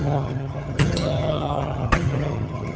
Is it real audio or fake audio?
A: fake